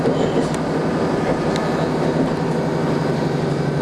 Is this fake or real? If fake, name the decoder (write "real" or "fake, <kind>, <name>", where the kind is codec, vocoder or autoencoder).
real